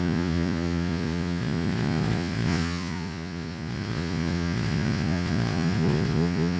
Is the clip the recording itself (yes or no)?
no